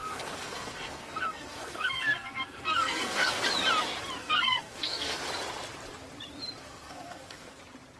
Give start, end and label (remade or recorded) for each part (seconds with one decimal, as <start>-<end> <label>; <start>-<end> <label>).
0.0-3.4 remade; 3.4-4.2 recorded; 4.2-5.2 remade; 5.2-6.6 recorded; 6.6-7.6 remade; 7.6-8.0 recorded

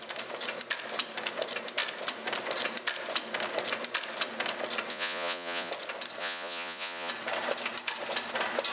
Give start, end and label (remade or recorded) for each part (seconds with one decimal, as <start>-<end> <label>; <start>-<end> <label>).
0.0-4.9 recorded; 4.9-5.7 remade; 5.7-6.2 recorded; 6.2-7.1 remade; 7.1-8.7 recorded

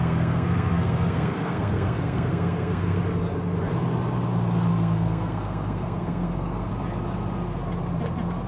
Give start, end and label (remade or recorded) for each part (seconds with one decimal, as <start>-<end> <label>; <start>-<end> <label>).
0.0-3.0 remade; 3.0-4.7 recorded; 4.7-6.7 remade; 6.7-8.5 recorded

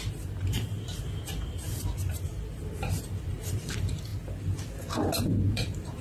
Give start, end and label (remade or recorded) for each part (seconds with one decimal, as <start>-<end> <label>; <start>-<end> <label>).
0.0-0.7 remade; 0.7-2.1 recorded; 2.1-4.1 remade; 4.1-5.2 recorded; 5.2-6.0 remade